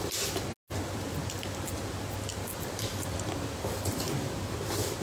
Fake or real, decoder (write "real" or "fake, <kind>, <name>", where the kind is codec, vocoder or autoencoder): real